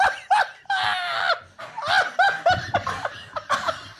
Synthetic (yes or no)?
yes